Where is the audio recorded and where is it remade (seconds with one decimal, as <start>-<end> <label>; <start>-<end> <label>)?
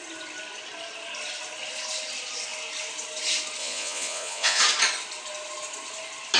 0.0-3.6 recorded; 3.6-4.6 remade; 4.6-6.4 recorded